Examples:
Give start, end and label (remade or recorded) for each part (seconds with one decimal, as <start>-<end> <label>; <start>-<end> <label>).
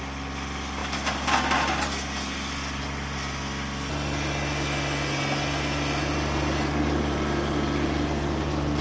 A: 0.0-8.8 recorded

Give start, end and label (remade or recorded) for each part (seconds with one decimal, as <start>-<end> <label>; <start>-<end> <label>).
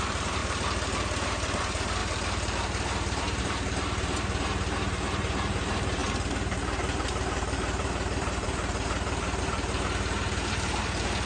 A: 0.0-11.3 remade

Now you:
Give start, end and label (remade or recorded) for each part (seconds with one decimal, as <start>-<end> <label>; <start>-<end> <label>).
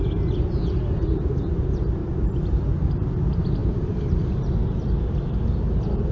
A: 0.0-2.0 recorded; 2.0-2.9 remade; 2.9-3.6 recorded; 3.6-4.3 remade; 4.3-6.1 recorded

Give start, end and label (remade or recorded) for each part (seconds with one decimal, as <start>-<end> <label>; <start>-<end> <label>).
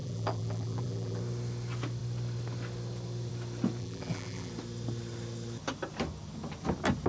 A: 0.0-1.2 remade; 1.2-3.8 recorded; 3.8-4.5 remade; 4.5-7.1 recorded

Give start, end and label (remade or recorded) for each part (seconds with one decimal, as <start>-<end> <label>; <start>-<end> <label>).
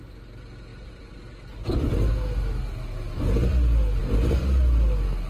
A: 0.0-0.7 recorded; 0.7-2.1 remade; 2.1-5.3 recorded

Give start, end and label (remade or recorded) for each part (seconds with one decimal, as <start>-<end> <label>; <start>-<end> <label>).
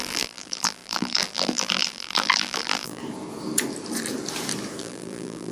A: 0.0-3.0 remade; 3.0-4.8 recorded; 4.8-5.5 remade